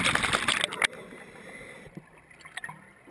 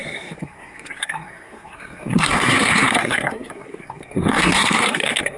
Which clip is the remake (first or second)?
second